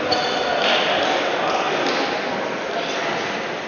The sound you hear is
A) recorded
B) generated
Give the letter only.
A